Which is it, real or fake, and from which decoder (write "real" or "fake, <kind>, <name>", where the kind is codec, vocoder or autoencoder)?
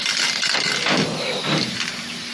real